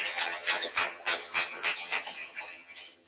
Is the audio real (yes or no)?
no